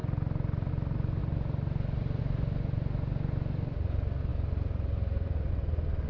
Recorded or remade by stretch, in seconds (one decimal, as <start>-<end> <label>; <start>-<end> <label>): 0.0-6.1 recorded